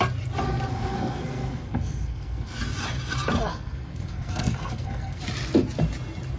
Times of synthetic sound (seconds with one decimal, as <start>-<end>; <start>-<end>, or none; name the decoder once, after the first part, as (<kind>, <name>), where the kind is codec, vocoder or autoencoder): 0.7-2.6 (codec, SNAC); 3.5-5.2